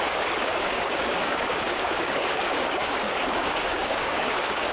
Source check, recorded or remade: remade